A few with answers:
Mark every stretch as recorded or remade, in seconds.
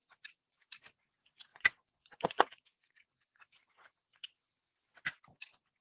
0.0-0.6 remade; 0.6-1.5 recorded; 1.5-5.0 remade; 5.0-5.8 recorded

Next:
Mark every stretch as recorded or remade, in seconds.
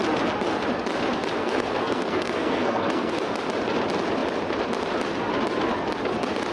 0.0-1.4 recorded; 1.4-3.1 remade; 3.1-6.5 recorded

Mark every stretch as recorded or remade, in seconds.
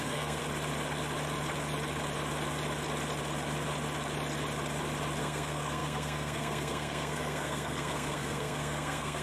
0.0-0.4 remade; 0.4-5.2 recorded; 5.2-9.2 remade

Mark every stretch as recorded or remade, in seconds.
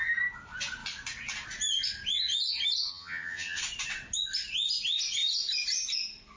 0.0-2.9 recorded; 2.9-3.6 remade; 3.6-6.4 recorded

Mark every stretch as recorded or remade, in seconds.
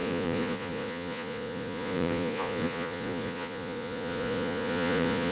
0.0-5.3 remade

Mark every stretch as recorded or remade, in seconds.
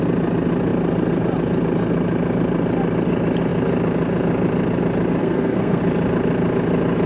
0.0-5.2 recorded; 5.2-5.8 remade; 5.8-7.1 recorded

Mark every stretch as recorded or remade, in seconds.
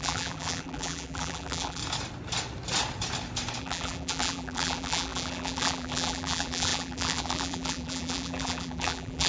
0.0-1.8 remade; 1.8-3.6 recorded; 3.6-9.3 remade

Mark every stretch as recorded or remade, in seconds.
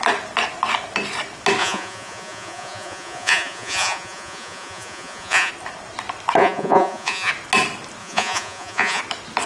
0.0-1.6 recorded; 1.6-5.5 remade; 5.5-6.4 recorded; 6.4-7.3 remade; 7.3-8.0 recorded; 8.0-9.0 remade; 9.0-9.5 recorded